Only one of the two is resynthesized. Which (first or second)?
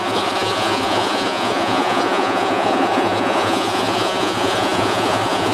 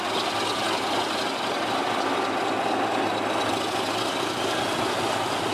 first